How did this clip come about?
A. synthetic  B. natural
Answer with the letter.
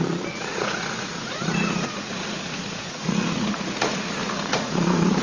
A